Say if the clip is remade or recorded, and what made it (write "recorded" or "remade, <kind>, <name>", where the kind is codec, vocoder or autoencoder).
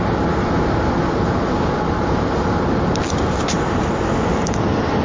recorded